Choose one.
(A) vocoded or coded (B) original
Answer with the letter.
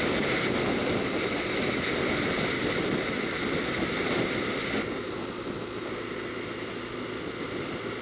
B